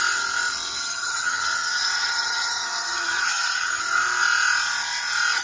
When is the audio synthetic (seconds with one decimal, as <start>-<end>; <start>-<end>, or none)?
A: 0.8-3.8